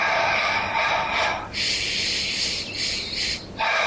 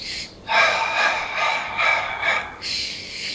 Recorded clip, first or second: first